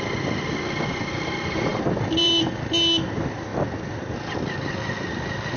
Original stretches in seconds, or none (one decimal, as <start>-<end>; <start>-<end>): 0.0-1.7; 2.3-5.6